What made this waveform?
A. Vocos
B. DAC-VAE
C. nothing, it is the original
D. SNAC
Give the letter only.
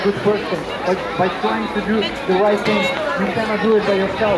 C